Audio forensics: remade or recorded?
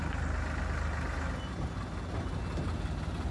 recorded